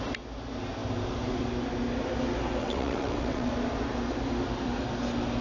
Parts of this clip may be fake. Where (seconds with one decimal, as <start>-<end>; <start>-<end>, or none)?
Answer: 2.6-3.5